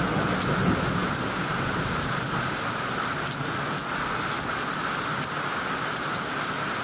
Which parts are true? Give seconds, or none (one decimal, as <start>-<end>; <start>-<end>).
0.0-6.8